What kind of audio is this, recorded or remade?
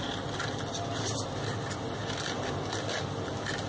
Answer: recorded